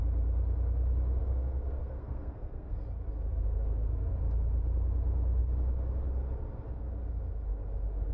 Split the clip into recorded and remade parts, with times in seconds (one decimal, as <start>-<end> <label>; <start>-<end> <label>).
0.0-1.2 recorded; 1.2-2.8 remade; 2.8-3.3 recorded; 3.3-4.0 remade; 4.0-8.1 recorded